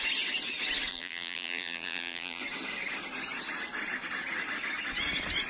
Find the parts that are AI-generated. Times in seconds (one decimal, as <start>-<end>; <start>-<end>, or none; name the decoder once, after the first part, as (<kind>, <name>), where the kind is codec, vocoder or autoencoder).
0.9-2.4 (vocoder, BigVGAN v2)